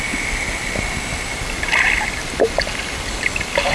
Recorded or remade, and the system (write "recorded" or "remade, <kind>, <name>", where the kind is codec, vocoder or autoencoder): recorded